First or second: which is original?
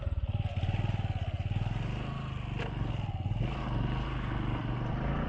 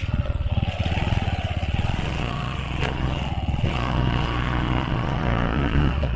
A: first